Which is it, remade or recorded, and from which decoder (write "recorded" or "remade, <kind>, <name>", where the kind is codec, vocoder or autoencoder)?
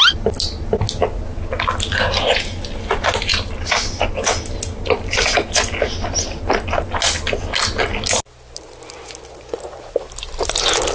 recorded